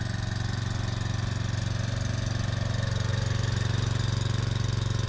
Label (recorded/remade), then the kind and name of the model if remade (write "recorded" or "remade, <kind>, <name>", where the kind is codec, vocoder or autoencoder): recorded